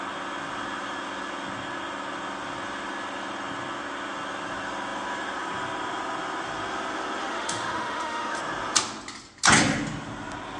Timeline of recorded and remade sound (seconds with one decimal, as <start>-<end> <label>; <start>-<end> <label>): 0.0-7.2 recorded; 7.2-8.4 remade; 8.4-10.6 recorded